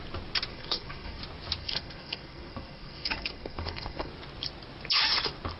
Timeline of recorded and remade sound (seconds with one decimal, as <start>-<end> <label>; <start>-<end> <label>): 0.0-0.5 recorded; 0.5-1.2 remade; 1.2-1.6 recorded; 1.6-4.1 remade; 4.1-5.6 recorded